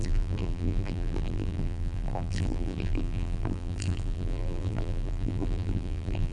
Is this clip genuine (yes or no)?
no